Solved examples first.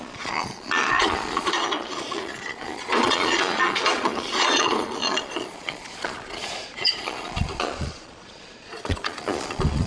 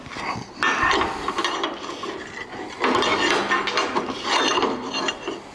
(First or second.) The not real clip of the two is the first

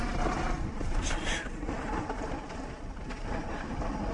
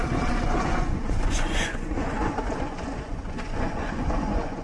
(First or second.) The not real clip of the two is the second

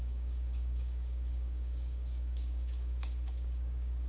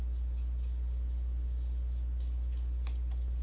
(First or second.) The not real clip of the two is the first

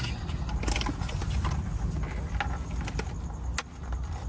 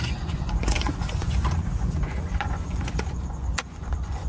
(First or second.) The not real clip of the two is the second